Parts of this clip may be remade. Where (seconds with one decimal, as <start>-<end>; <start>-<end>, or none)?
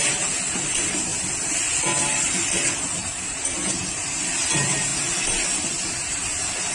none